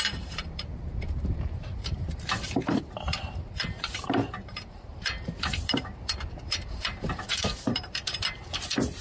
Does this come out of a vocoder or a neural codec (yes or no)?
yes